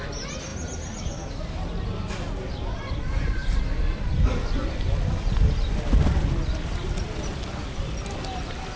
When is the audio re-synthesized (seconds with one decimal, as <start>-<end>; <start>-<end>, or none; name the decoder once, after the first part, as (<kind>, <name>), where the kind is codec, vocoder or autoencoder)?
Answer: none